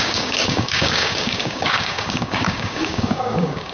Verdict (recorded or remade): remade